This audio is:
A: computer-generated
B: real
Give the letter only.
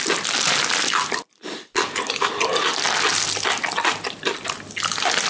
B